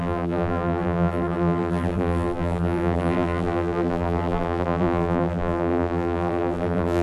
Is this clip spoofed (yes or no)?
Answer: yes